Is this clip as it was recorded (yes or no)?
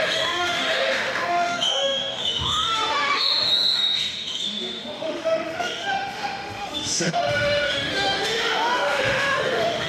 no